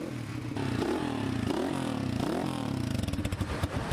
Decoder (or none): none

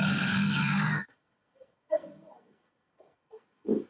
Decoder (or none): codec, SNAC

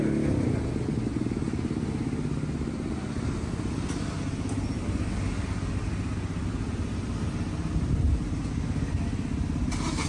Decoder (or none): none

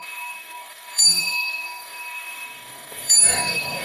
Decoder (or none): codec, DAC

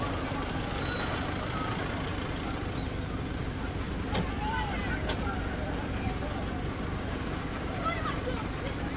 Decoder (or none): none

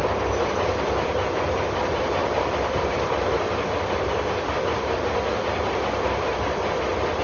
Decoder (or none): vocoder, BigVGAN v2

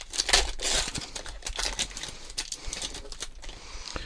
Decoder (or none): vocoder, BigVGAN v2